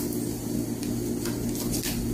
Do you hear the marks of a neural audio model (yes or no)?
no